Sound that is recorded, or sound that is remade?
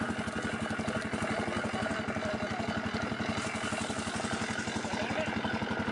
recorded